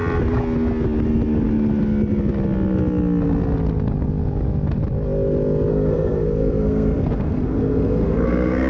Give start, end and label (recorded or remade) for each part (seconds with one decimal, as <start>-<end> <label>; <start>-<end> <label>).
0.0-5.7 recorded; 5.7-8.7 remade